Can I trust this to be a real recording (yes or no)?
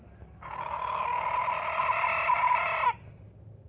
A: yes